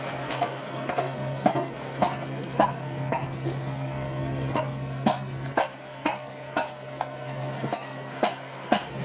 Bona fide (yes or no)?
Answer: no